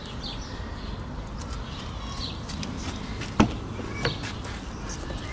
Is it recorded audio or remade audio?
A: recorded